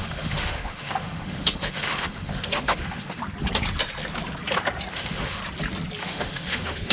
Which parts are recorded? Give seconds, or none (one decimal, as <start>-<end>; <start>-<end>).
3.2-4.9; 5.4-6.0